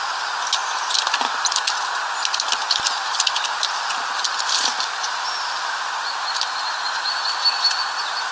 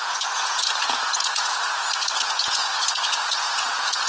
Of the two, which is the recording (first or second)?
first